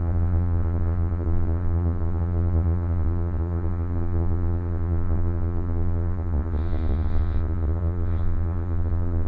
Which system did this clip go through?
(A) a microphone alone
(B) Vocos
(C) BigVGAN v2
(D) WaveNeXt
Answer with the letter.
B